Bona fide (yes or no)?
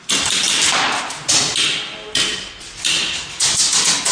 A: yes